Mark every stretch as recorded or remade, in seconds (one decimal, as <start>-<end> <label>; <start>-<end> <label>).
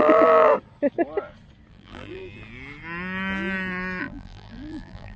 0.0-0.5 remade; 0.5-1.7 recorded; 1.7-2.2 remade; 2.2-4.0 recorded; 4.0-5.2 remade